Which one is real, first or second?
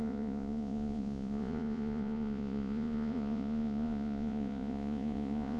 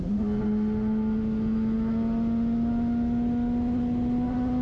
second